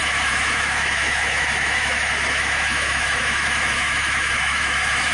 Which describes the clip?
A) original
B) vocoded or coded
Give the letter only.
B